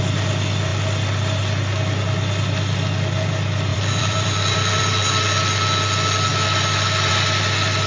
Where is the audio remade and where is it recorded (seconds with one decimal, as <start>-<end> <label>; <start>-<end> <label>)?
0.0-3.7 recorded; 3.7-5.1 remade; 5.1-7.9 recorded